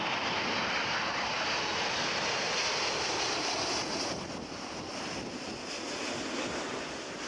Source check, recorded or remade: recorded